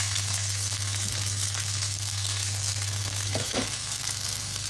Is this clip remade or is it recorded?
remade